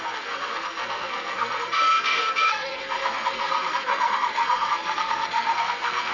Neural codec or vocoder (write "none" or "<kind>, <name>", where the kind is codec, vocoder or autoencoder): codec, SNAC